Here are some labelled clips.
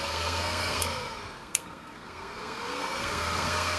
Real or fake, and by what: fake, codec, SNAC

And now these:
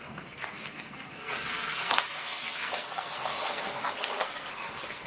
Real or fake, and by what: fake, codec, SNAC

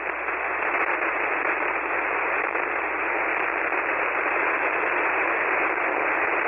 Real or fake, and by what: real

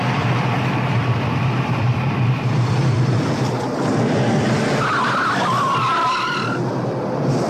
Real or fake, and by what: fake, vocoder, BigVGAN v2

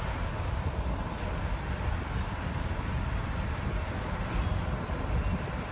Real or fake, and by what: real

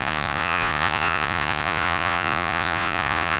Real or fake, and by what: fake, vocoder, Vocos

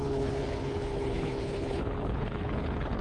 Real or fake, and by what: fake, codec, HILCodec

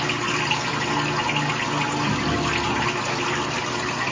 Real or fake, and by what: real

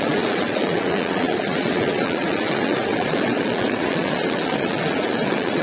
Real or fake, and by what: fake, vocoder, Vocos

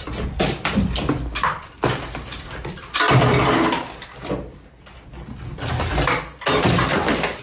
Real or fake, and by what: real